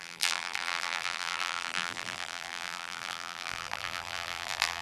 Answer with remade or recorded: remade